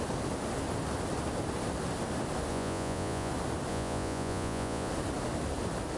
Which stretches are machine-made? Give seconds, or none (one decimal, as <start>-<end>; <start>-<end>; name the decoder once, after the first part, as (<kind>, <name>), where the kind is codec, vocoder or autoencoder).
2.5-3.3 (vocoder, Vocos); 3.7-4.9